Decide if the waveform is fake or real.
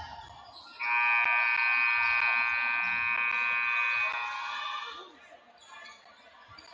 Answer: real